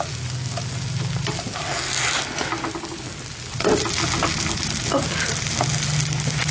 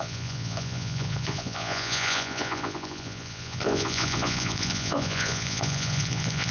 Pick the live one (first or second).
first